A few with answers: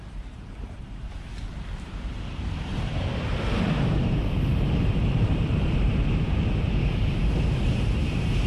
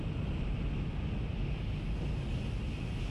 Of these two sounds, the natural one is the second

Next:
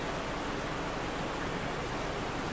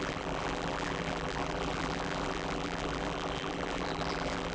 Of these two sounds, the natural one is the first